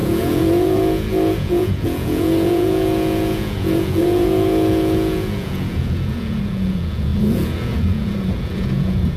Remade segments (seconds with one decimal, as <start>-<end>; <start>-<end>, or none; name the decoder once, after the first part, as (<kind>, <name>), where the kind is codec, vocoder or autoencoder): 0.0-9.2 (vocoder, Vocos)